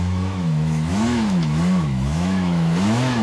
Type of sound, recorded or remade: remade